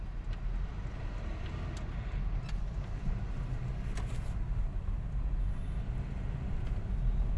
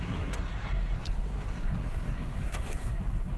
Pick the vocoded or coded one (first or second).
second